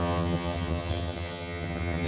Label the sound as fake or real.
fake